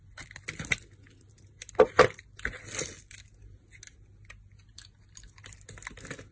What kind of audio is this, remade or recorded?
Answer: recorded